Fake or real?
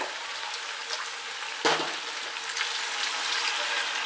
real